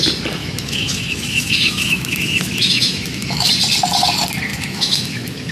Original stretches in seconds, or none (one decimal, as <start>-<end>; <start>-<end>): 0.0-0.4; 3.5-4.5